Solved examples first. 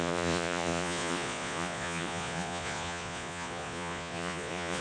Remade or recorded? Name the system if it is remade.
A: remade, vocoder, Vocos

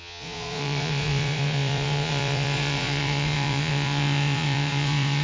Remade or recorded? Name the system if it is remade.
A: remade, vocoder, Vocos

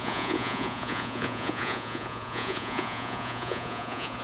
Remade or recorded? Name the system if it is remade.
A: remade, vocoder, Vocos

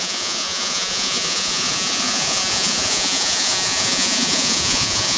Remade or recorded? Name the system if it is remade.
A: remade, vocoder, Vocos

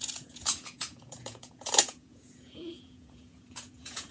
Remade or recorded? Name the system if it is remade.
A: remade, vocoder, Vocos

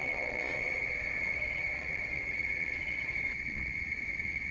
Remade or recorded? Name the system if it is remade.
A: remade, vocoder, Vocos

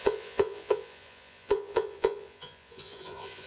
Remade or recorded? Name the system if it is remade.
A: remade, vocoder, Vocos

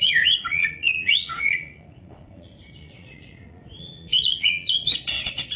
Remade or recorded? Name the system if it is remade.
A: remade, vocoder, Vocos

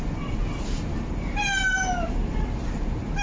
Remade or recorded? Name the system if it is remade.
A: recorded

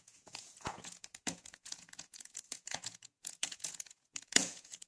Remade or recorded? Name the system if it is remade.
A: remade, vocoder, Vocos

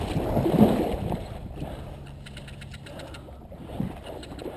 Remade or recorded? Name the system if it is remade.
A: recorded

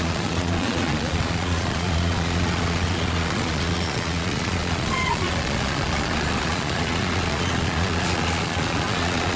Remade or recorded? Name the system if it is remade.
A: remade, vocoder, Vocos